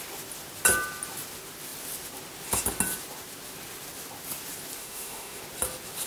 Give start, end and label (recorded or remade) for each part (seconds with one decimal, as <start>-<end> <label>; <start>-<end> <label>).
0.0-4.8 recorded; 4.8-5.4 remade; 5.4-6.1 recorded